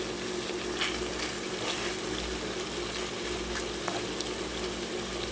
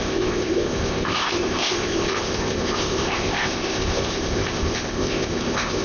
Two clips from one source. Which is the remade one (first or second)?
second